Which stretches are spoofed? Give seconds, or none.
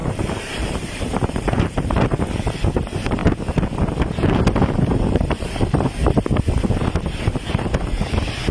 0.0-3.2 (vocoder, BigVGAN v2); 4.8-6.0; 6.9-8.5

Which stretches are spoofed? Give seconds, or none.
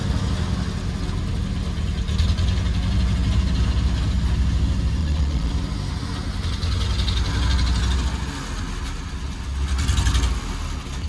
5.0-5.5 (vocoder, Vocos)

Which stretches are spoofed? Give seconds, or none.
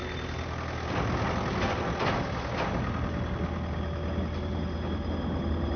none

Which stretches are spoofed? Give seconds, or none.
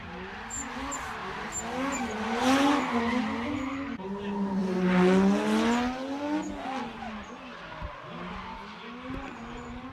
none